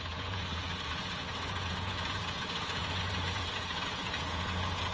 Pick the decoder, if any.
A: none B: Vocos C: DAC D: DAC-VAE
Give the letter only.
B